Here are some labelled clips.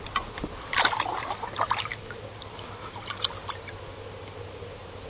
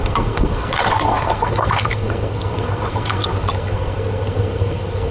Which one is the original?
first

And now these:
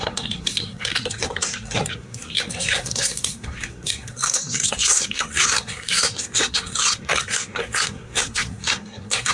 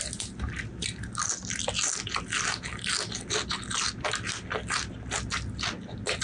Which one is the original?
second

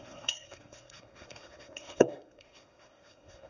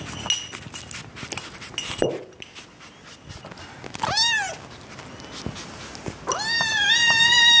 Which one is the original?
second